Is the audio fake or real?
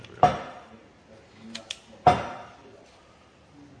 real